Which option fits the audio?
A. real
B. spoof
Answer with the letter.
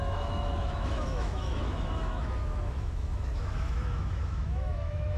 B